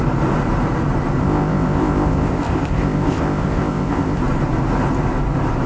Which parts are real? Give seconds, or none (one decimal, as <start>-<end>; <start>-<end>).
0.0-1.2; 4.2-5.7